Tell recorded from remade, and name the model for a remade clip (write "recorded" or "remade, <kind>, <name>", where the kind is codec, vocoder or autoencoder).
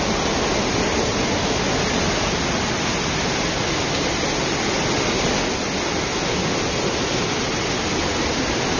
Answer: recorded